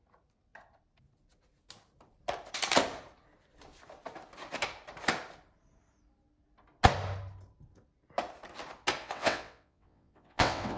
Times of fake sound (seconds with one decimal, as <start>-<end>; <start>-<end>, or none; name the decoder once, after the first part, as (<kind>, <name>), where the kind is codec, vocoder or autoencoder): 9.0-10.8 (vocoder, WaveNeXt)